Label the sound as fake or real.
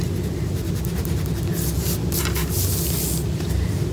real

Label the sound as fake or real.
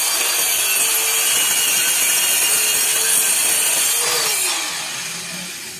real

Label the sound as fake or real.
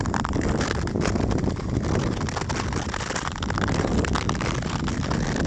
real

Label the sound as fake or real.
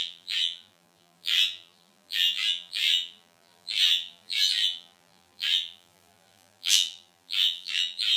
fake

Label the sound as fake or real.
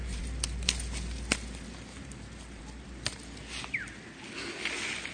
real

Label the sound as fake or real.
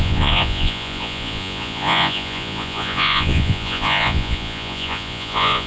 fake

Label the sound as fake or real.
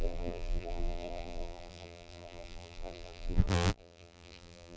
fake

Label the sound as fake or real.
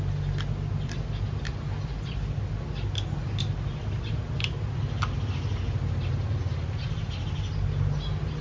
real